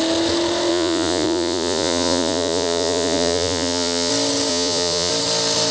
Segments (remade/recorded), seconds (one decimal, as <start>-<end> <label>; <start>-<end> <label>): 0.0-0.7 recorded; 0.7-4.1 remade; 4.1-4.5 recorded; 4.5-5.1 remade; 5.1-5.7 recorded